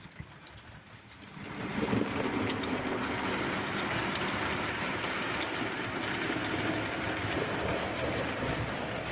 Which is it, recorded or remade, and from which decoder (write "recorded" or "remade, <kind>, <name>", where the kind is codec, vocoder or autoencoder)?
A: recorded